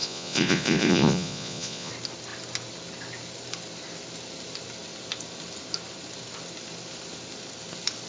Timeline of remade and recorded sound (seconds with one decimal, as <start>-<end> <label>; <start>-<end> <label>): 0.0-1.9 remade; 1.9-8.1 recorded

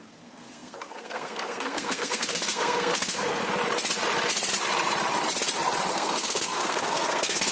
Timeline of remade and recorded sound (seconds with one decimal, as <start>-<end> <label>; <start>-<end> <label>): 0.0-3.4 remade; 3.4-5.9 recorded; 5.9-7.5 remade

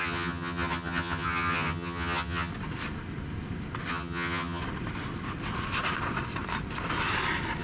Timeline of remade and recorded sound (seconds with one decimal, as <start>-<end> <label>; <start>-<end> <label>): 0.0-2.5 remade; 2.5-3.9 recorded; 3.9-4.6 remade; 4.6-7.6 recorded